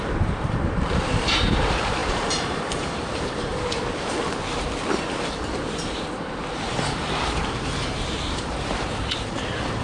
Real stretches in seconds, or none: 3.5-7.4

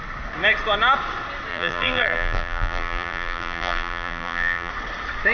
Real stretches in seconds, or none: 0.0-1.5; 4.7-5.3

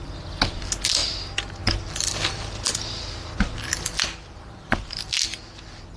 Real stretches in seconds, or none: 0.0-6.0

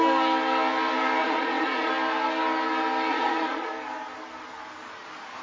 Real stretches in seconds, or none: 0.0-1.2; 1.9-3.1; 3.7-5.4

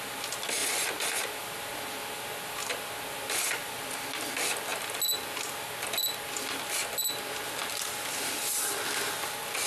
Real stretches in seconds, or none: 0.0-9.7

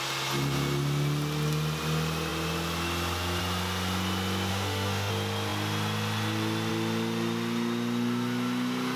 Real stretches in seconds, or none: 0.0-4.5; 5.1-9.0

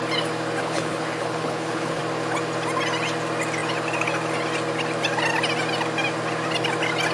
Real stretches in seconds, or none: 0.0-0.6; 2.0-7.1